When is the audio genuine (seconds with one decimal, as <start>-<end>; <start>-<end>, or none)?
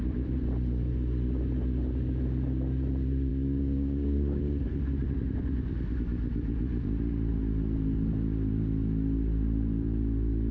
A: 0.0-3.3; 4.4-10.5